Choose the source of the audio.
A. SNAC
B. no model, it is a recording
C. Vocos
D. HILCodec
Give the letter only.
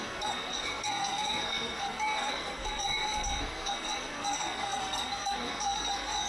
A